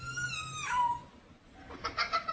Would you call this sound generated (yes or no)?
no